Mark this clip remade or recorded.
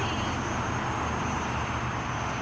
recorded